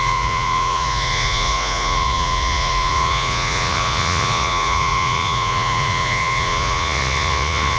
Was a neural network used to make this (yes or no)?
yes